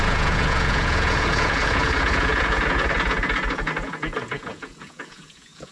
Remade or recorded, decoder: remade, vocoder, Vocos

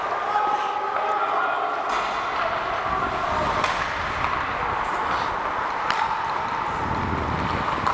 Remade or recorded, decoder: recorded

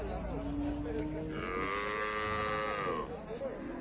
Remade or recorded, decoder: recorded